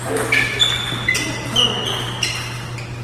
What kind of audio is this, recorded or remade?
recorded